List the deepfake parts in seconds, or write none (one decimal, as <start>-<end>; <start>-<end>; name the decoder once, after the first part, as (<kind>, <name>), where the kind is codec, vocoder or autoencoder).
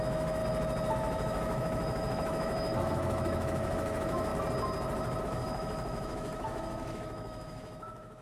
0.0-0.4 (autoencoder, DAC-VAE); 0.9-4.3; 5.2-8.2